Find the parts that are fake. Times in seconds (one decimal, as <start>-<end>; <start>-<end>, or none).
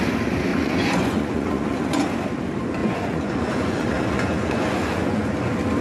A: 0.5-2.0; 2.8-5.3